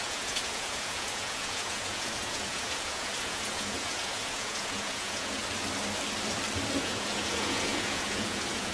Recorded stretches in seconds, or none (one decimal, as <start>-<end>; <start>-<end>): 5.4-6.8